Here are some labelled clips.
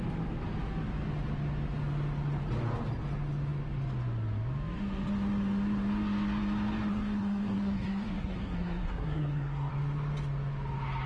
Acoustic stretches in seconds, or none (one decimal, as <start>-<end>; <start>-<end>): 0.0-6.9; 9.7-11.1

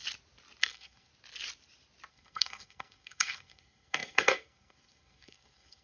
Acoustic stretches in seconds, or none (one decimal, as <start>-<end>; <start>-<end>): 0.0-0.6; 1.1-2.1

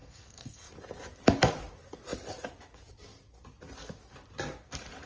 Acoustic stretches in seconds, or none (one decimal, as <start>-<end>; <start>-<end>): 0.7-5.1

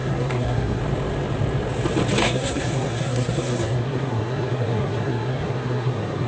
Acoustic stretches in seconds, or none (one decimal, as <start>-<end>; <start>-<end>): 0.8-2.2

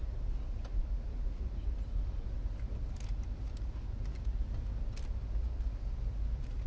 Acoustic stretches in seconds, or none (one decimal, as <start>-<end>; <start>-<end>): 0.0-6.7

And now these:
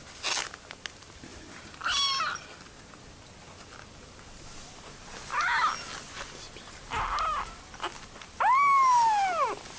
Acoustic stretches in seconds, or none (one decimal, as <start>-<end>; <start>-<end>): 0.0-9.8